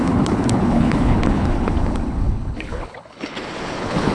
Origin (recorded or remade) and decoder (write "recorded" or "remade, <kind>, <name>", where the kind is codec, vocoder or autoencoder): remade, codec, HILCodec